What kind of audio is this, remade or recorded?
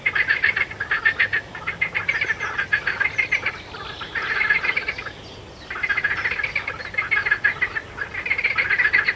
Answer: recorded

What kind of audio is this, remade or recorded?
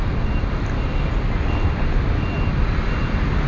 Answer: recorded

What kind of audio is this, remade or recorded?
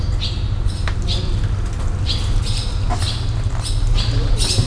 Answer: recorded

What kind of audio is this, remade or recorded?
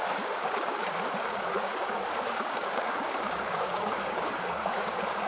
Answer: remade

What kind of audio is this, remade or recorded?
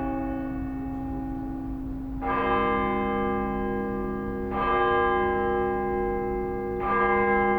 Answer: recorded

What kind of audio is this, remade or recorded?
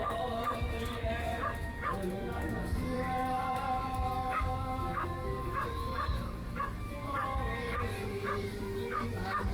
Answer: remade